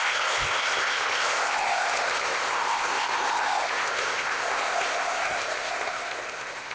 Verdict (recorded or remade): remade